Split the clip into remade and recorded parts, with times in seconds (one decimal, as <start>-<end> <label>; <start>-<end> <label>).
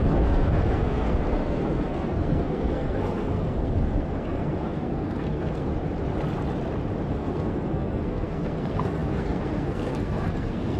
0.0-5.7 remade; 5.7-7.1 recorded; 7.1-10.8 remade